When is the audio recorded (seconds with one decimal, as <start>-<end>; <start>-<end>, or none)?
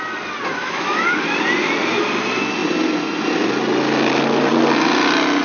0.0-0.6; 1.2-5.4